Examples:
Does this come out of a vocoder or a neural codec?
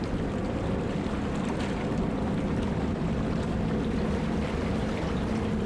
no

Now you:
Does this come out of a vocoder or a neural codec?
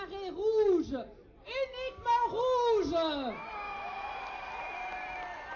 no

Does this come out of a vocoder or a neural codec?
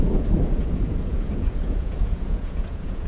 yes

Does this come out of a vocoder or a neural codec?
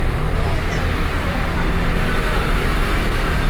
no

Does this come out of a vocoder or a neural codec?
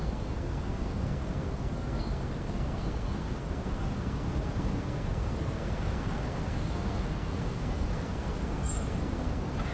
yes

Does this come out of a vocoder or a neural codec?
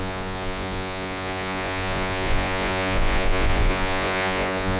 yes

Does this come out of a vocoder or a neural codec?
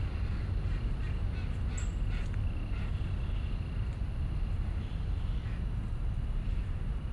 no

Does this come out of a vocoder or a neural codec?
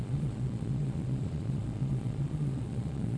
yes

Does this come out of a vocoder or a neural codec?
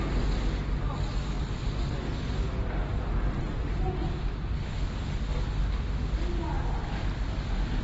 no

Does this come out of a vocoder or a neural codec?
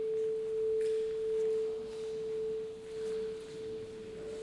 no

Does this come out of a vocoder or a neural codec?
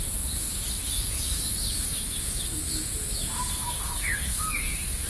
yes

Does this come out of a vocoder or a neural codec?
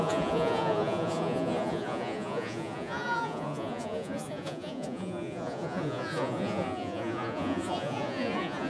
yes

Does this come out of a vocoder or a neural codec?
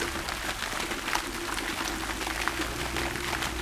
no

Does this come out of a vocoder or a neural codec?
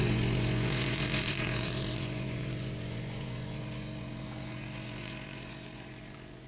yes